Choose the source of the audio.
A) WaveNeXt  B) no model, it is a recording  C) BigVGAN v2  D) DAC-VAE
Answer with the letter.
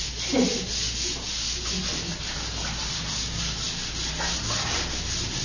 B